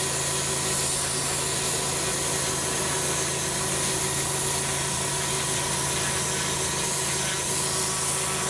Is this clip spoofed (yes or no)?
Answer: no